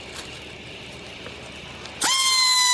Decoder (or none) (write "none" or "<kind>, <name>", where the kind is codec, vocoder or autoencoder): none